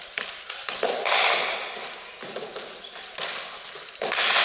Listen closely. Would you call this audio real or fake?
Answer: real